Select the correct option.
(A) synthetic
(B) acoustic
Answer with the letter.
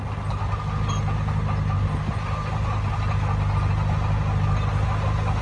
B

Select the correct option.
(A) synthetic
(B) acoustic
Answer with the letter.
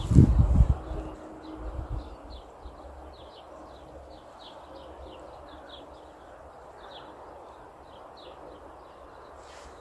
B